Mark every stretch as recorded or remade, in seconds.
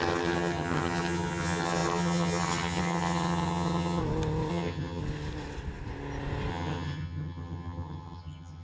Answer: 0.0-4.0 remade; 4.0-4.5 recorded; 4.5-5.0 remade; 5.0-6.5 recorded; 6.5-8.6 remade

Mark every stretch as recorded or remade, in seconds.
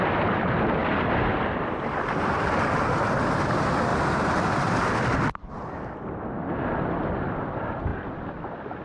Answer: 0.0-3.9 recorded; 3.9-5.5 remade; 5.5-8.8 recorded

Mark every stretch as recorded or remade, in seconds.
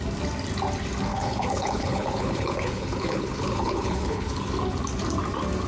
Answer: 0.0-1.1 recorded; 1.1-4.5 remade; 4.5-5.7 recorded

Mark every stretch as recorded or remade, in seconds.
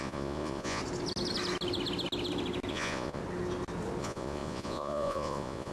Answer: 0.0-0.8 remade; 0.8-2.7 recorded; 2.7-3.2 remade; 3.2-4.0 recorded; 4.0-5.7 remade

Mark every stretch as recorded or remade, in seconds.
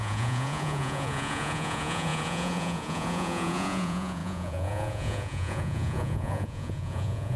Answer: 0.0-7.4 remade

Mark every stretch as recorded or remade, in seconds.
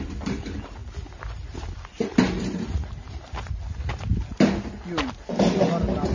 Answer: 0.0-0.8 remade; 0.8-1.9 recorded; 1.9-4.1 remade; 4.1-5.0 recorded; 5.0-6.1 remade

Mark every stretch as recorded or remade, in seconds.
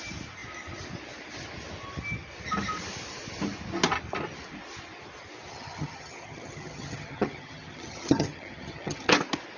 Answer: 0.0-5.5 recorded; 5.5-9.1 remade; 9.1-9.6 recorded